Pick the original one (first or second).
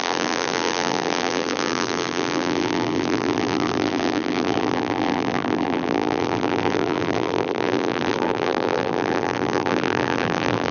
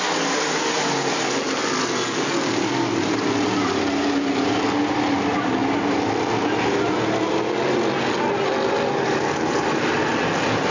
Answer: second